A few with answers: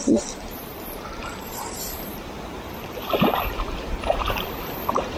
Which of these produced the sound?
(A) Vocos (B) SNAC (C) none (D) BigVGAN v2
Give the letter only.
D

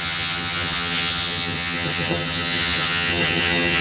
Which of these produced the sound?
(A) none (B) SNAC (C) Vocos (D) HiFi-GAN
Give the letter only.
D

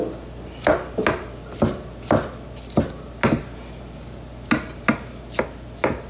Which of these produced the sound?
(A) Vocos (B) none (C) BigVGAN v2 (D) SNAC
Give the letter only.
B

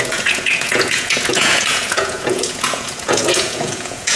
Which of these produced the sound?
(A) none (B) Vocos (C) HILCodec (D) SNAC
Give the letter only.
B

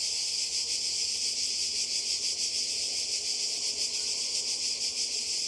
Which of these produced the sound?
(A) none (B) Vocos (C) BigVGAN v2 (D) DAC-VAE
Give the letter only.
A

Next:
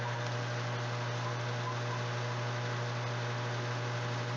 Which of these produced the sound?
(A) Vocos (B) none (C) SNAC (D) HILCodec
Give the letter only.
B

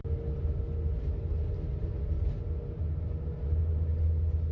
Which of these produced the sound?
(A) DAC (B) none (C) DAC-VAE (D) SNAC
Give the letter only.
B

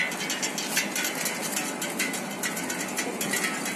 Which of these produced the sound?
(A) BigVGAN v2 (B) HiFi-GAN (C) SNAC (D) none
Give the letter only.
D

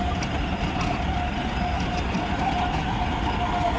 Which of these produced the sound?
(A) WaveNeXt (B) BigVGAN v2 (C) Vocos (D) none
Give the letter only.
D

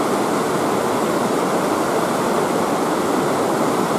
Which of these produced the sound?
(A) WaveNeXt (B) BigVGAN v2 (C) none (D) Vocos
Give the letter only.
C